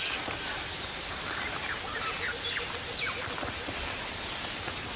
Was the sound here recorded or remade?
recorded